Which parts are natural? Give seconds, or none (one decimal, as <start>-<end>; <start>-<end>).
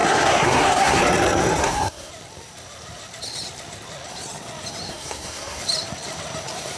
1.0-1.6; 2.1-4.9; 5.6-6.8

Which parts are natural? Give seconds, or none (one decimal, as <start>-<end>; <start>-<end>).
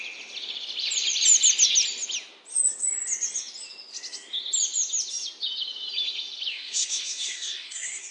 0.0-6.5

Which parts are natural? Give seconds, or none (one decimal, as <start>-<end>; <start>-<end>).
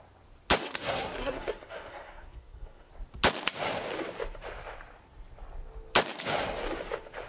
0.0-0.6; 2.9-7.3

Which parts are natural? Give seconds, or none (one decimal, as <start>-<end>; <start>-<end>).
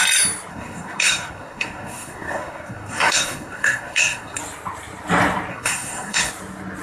0.0-0.5; 4.4-5.5; 6.3-6.8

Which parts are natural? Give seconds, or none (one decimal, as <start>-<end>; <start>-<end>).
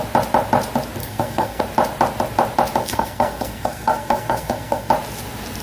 0.0-1.0; 1.6-2.8; 4.9-5.6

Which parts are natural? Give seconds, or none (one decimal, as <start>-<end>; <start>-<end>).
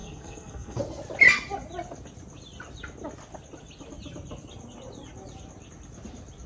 0.8-6.5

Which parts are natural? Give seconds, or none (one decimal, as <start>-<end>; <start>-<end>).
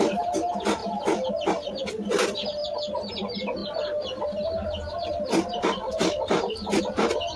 0.0-7.4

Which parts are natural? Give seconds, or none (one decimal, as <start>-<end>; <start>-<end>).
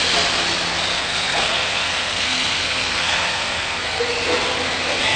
0.0-0.9; 4.0-5.2